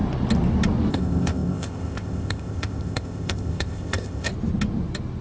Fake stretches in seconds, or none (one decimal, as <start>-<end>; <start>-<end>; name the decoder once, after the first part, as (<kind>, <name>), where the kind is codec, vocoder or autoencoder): 0.9-4.3 (codec, ZipCodec)